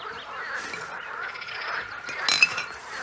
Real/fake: real